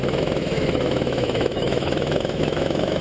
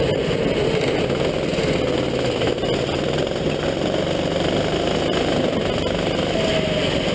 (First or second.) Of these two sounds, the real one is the second